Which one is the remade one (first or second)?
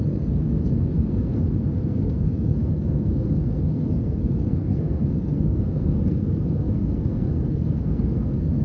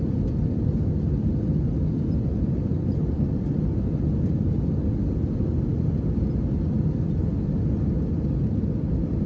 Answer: first